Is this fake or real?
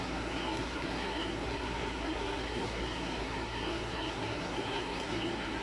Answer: fake